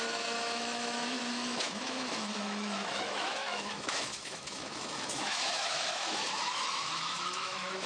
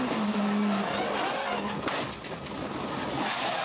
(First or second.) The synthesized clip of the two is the first